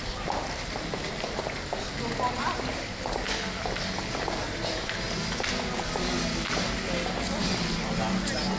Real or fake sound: real